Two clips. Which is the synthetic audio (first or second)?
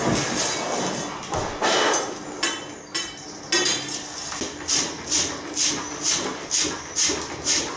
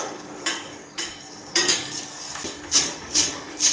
second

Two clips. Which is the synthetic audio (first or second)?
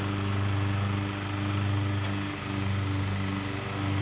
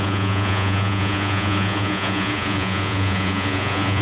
second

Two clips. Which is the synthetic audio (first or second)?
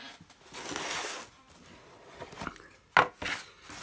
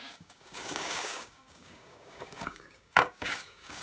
second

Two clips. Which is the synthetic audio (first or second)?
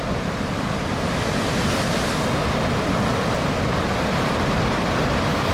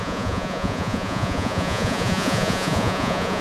second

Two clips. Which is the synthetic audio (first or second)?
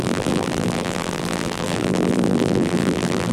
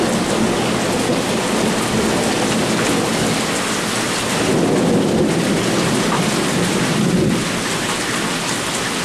first